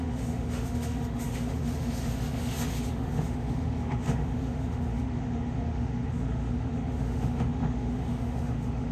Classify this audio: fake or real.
fake